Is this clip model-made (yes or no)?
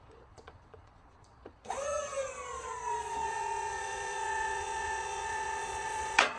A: yes